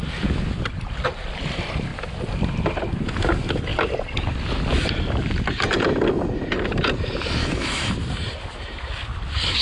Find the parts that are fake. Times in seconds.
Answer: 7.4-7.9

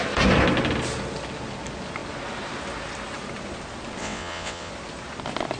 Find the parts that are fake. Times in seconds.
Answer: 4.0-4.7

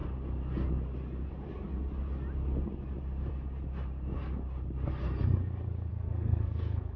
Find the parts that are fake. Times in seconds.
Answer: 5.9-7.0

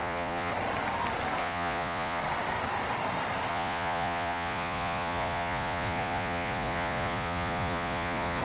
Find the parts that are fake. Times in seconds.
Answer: 0.0-0.5; 1.4-2.2; 3.5-8.4

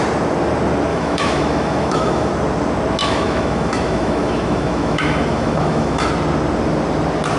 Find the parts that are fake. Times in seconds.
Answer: 0.9-2.3; 3.0-6.1